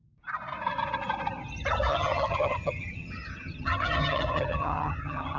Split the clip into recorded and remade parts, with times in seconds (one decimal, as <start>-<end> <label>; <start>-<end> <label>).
0.0-1.9 recorded; 1.9-5.4 remade